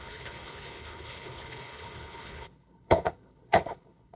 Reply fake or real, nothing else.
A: fake